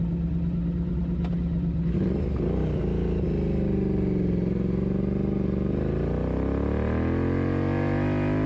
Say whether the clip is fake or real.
real